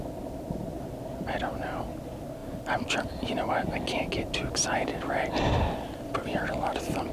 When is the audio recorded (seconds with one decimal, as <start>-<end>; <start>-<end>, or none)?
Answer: 0.0-7.1